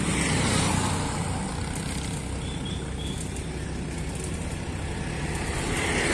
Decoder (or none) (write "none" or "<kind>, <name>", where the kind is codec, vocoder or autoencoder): none